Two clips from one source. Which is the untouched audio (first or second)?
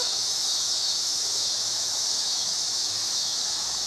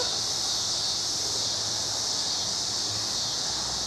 second